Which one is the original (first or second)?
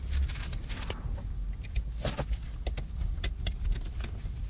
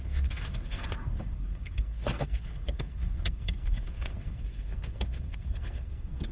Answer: first